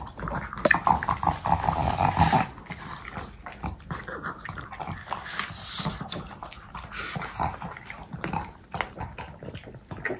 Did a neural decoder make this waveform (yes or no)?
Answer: no